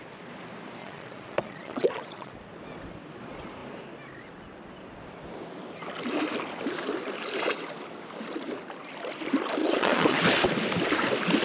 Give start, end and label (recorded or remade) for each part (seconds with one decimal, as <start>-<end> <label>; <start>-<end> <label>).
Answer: 0.0-0.8 recorded; 0.8-2.3 remade; 2.3-9.6 recorded; 9.6-10.2 remade; 10.2-11.4 recorded